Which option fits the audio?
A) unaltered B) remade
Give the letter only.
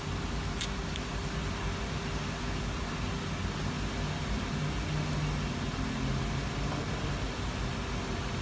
A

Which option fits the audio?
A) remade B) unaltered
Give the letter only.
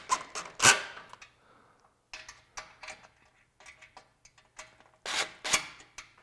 B